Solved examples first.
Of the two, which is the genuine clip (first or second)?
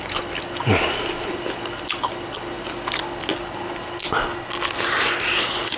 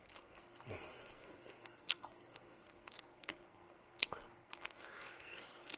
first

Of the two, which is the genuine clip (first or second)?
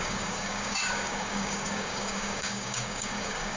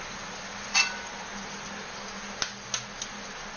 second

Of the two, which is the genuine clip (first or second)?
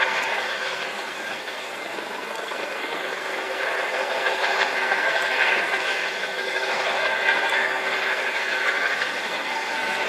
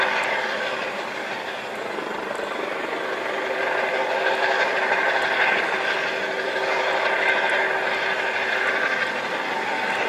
second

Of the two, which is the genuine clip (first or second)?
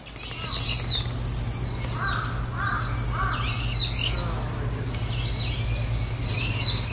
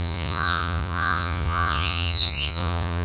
first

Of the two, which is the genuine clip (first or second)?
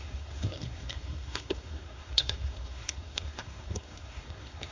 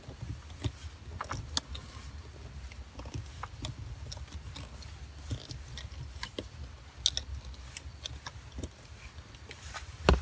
second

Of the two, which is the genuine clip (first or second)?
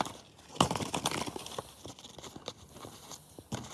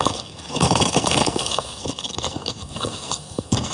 first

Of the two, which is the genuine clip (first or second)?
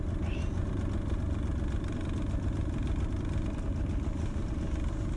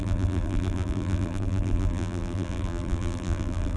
first